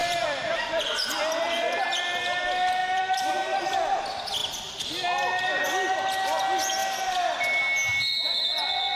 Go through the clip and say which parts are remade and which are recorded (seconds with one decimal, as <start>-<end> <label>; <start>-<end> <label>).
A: 0.0-1.8 remade; 1.8-2.8 recorded; 2.8-4.0 remade; 4.0-4.4 recorded; 4.4-5.6 remade; 5.6-9.0 recorded